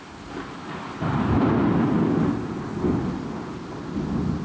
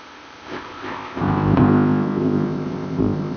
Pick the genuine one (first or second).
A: first